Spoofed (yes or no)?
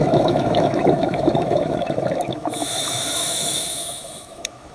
yes